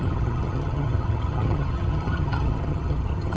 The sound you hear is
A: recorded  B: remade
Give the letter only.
B